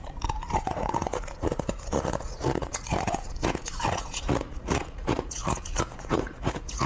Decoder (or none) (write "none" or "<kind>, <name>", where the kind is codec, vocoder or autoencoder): vocoder, Vocos